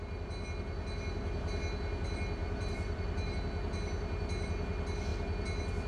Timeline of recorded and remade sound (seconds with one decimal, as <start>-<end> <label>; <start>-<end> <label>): 0.0-2.4 recorded; 2.4-3.4 remade; 3.4-5.9 recorded